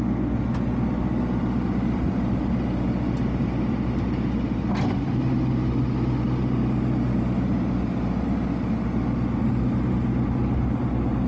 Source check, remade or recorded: recorded